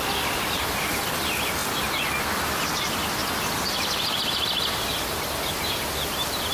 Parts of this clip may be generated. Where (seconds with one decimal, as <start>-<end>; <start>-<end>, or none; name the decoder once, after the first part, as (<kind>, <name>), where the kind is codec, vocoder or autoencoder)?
none